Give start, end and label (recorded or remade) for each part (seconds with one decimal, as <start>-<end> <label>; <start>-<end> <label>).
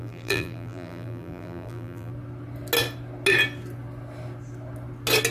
0.0-2.1 remade; 2.1-5.3 recorded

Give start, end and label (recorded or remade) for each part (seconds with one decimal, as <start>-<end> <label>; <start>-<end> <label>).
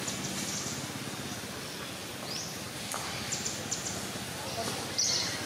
0.0-5.5 recorded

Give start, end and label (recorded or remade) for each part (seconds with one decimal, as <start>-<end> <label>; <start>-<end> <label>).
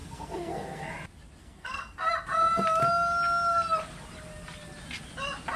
0.0-0.9 remade; 0.9-1.4 recorded; 1.4-2.1 remade; 2.1-5.6 recorded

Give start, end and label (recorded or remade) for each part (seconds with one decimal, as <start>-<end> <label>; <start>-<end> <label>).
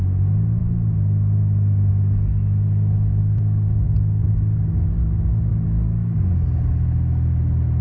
0.0-3.2 recorded; 3.2-4.3 remade; 4.3-5.5 recorded; 5.5-6.2 remade; 6.2-7.8 recorded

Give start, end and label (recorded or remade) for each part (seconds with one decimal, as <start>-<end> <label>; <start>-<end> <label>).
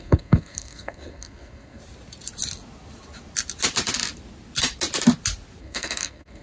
0.0-1.8 remade; 1.8-5.6 recorded; 5.6-6.4 remade